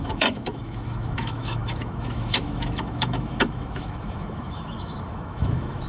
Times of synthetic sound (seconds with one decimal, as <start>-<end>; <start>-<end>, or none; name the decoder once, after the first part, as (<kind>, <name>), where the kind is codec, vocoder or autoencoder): 0.0-5.9 (autoencoder, DAC-VAE)